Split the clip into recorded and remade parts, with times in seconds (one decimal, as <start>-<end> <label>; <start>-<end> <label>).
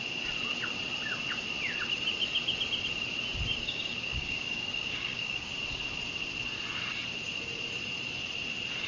0.0-3.5 recorded; 3.5-5.5 remade; 5.5-8.9 recorded